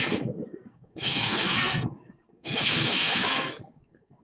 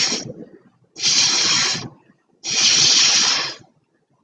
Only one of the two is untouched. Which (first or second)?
second